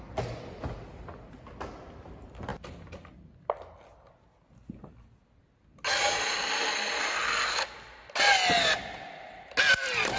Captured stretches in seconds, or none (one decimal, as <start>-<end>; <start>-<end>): 0.0-10.2